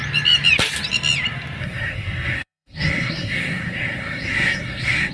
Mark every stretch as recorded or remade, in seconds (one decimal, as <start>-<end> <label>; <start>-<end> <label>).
0.0-1.6 recorded; 1.6-5.1 remade